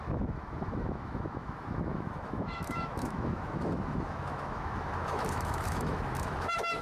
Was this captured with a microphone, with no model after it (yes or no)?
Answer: no